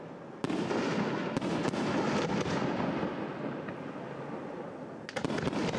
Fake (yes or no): no